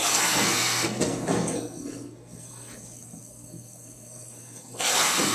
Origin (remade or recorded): remade